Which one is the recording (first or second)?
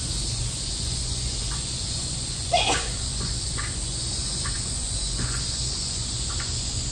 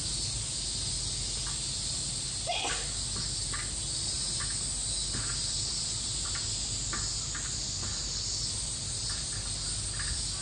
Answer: second